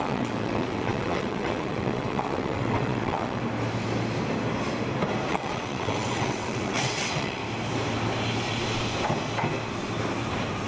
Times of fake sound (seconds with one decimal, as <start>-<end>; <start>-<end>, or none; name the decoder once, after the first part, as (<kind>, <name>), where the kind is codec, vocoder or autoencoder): 0.0-3.4 (vocoder, WaveNeXt); 5.3-7.4